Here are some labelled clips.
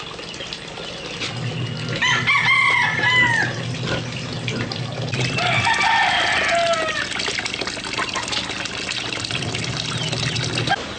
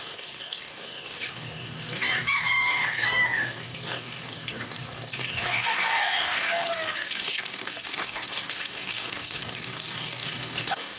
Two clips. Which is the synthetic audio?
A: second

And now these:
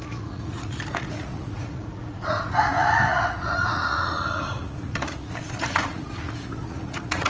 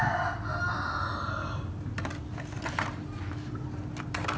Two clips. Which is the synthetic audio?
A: first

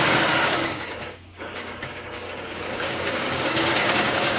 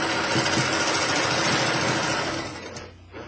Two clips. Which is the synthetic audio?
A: first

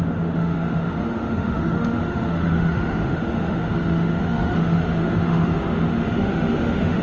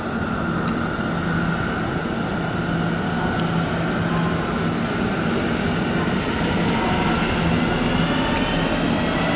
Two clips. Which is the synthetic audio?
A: first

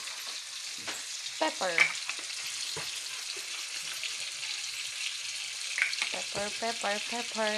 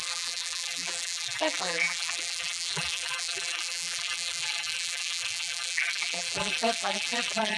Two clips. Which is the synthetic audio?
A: second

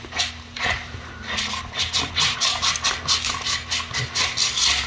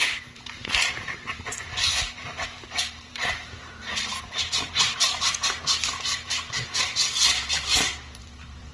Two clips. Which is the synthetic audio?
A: second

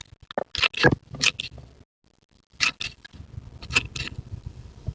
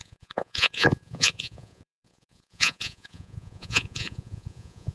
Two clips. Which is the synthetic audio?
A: second